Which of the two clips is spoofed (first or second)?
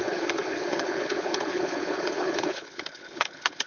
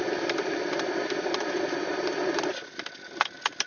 first